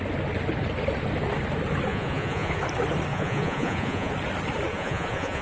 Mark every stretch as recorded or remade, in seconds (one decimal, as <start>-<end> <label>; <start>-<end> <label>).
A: 0.0-1.9 recorded; 1.9-2.6 remade; 2.6-3.1 recorded; 3.1-4.1 remade; 4.1-4.7 recorded; 4.7-5.4 remade

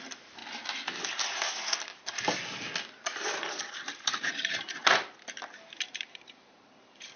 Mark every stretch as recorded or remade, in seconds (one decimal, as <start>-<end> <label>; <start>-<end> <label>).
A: 0.0-0.4 remade; 0.4-3.7 recorded; 3.7-4.7 remade; 4.7-5.9 recorded; 5.9-7.2 remade

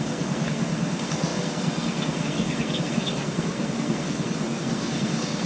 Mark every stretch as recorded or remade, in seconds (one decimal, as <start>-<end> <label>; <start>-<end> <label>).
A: 0.0-5.5 remade

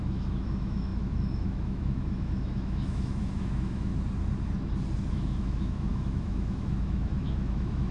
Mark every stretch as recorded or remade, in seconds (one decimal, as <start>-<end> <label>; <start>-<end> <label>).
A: 0.0-3.9 remade; 3.9-5.1 recorded; 5.1-7.9 remade

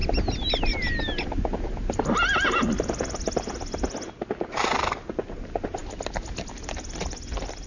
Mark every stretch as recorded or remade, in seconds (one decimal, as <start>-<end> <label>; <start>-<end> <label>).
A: 0.0-7.7 recorded

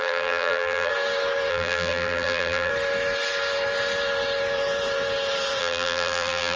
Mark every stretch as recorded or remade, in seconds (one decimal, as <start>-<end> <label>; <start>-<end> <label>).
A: 0.0-0.9 remade; 0.9-1.5 recorded; 1.5-2.7 remade; 2.7-5.6 recorded; 5.6-6.6 remade

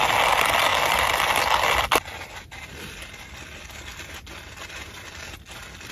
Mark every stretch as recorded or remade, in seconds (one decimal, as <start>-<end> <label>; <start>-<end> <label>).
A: 0.0-5.9 recorded

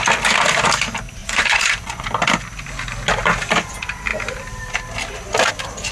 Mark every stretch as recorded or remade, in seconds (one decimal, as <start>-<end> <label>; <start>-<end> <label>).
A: 0.0-1.2 recorded; 1.2-2.0 remade; 2.0-5.9 recorded